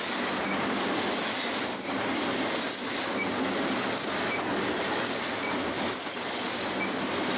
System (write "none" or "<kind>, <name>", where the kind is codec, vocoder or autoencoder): none